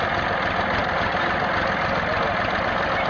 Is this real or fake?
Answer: real